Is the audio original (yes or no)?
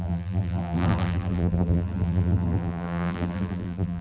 no